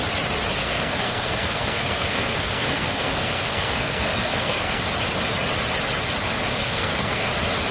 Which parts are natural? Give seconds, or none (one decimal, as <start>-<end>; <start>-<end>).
0.0-0.6; 4.8-6.6; 7.3-7.7